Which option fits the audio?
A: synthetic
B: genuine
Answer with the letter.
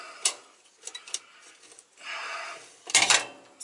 B